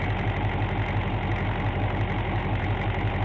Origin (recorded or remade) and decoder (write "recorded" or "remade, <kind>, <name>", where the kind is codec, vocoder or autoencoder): recorded